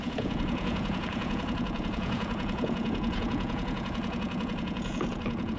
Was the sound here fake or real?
fake